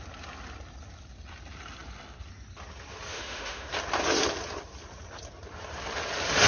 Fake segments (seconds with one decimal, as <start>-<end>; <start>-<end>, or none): 3.1-3.7